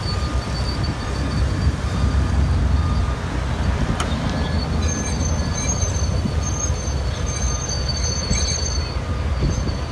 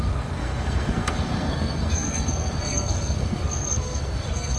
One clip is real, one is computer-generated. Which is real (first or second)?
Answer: first